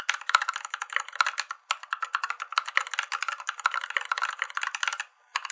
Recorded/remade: recorded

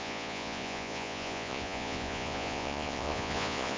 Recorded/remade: remade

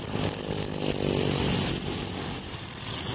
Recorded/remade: recorded